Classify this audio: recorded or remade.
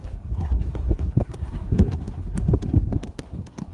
remade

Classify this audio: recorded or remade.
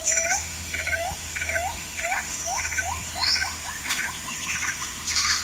remade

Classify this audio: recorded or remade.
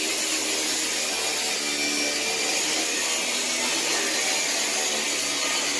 recorded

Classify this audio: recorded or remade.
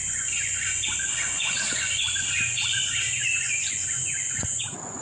remade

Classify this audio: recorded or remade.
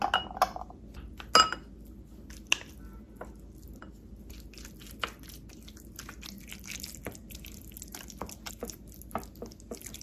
recorded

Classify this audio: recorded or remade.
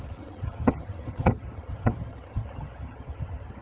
remade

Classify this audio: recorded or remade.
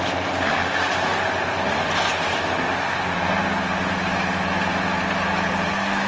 recorded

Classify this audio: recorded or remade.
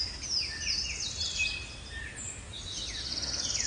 recorded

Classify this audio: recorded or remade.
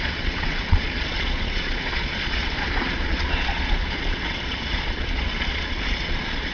remade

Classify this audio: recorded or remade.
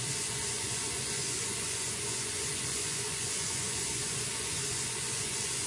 remade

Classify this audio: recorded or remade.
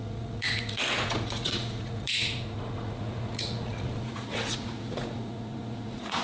remade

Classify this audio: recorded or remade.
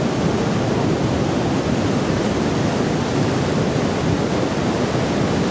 recorded